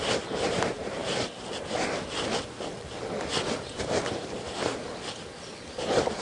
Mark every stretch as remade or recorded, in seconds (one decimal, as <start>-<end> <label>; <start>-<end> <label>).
0.0-6.2 recorded